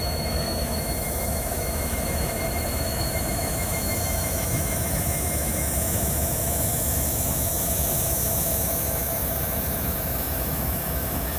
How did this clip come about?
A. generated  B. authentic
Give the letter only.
A